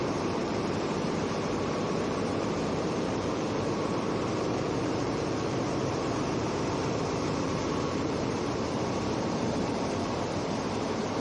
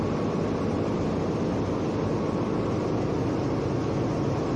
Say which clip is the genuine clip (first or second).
second